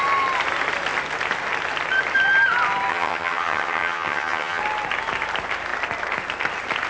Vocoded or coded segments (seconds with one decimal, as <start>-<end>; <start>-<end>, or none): 2.9-4.6